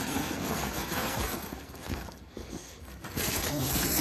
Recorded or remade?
remade